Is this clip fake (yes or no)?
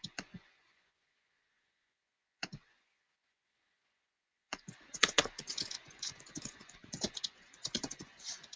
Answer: yes